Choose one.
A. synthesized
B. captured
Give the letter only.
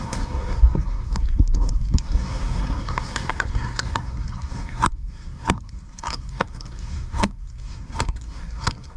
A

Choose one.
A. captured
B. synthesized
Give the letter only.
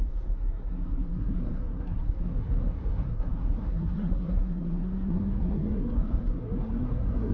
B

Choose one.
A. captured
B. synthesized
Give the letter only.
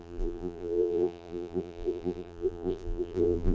B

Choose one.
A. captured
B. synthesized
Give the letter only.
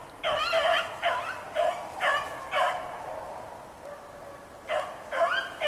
A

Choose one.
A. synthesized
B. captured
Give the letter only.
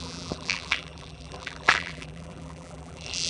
A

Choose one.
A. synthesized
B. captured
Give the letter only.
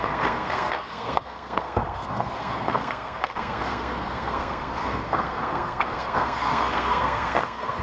A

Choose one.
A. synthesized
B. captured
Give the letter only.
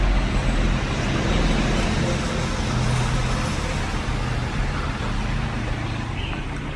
B